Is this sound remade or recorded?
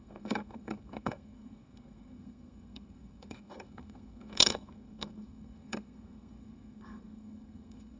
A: remade